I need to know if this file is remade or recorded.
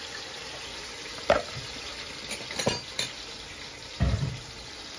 recorded